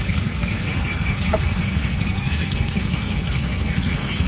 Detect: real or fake fake